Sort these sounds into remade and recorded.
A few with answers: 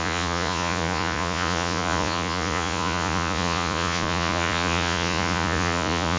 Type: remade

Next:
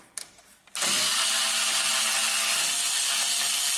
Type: recorded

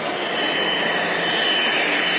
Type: recorded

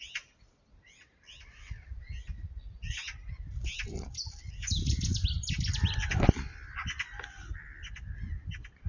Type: recorded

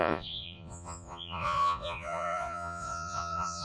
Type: remade